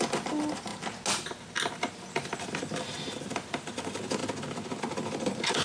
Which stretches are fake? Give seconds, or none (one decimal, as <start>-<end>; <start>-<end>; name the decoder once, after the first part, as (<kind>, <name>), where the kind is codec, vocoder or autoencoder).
0.0-0.7 (vocoder, BigVGAN v2); 1.7-4.2; 4.8-5.6